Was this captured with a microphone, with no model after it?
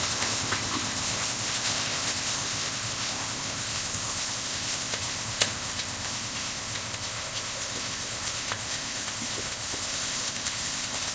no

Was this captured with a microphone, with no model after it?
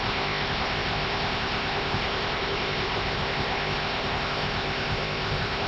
no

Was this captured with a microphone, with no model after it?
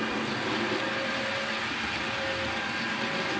yes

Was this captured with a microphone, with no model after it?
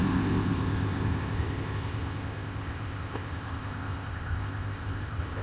no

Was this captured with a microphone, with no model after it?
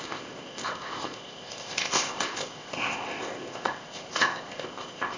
no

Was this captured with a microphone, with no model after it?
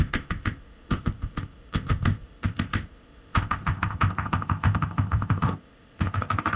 no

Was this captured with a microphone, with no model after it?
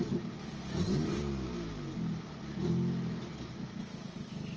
yes